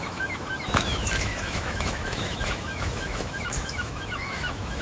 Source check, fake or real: fake